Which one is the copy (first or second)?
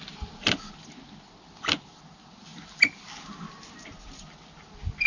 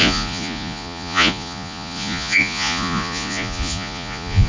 second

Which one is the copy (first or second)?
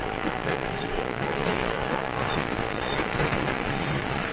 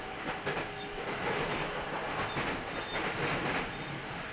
first